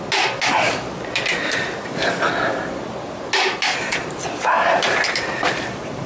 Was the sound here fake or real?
real